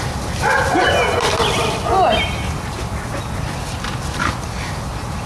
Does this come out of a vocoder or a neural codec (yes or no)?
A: no